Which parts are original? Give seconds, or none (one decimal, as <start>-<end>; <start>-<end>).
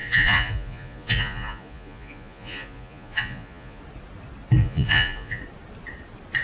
3.8-4.6; 5.4-6.4